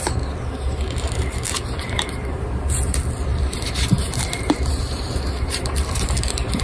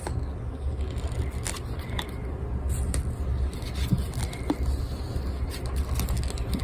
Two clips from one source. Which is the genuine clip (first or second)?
second